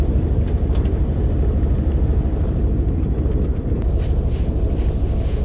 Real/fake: fake